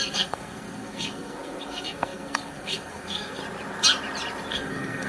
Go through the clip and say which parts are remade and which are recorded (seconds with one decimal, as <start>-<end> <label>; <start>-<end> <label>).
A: 0.0-3.4 remade; 3.4-4.5 recorded; 4.5-5.1 remade